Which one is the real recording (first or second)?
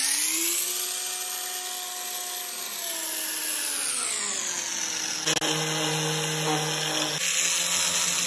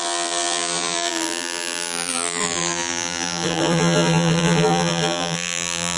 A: first